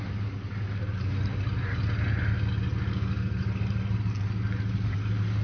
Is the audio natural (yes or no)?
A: yes